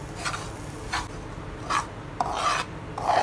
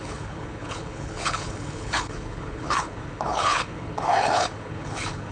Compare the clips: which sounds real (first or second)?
first